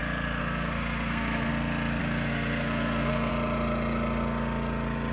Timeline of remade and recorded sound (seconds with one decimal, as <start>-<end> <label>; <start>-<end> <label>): 0.0-0.4 recorded; 0.4-1.5 remade; 1.5-2.0 recorded; 2.0-3.3 remade; 3.3-5.1 recorded